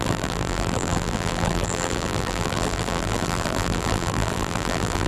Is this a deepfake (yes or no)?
yes